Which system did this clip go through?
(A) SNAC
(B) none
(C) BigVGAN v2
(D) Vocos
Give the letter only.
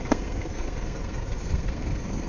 A